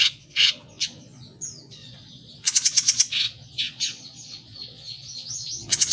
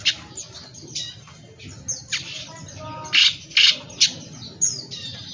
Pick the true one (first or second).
second